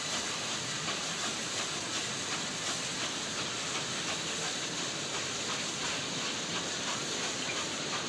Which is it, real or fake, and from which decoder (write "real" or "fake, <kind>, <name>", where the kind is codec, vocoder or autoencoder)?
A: fake, vocoder, BigVGAN v2